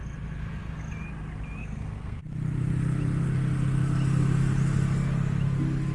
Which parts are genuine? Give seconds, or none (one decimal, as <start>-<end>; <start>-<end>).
0.0-1.6; 2.2-5.9